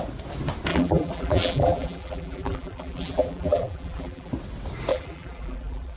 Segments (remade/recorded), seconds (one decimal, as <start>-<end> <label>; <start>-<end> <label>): 0.0-0.7 recorded; 0.7-4.3 remade; 4.3-4.9 recorded; 4.9-6.0 remade